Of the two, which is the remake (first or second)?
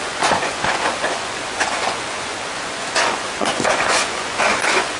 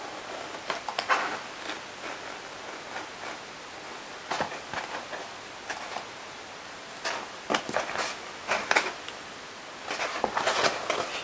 first